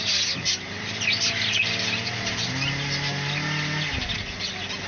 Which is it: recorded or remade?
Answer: recorded